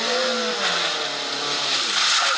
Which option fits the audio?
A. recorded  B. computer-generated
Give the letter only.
A